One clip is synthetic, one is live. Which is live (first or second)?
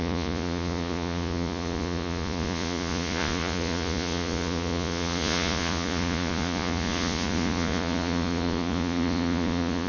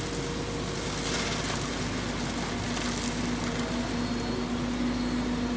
second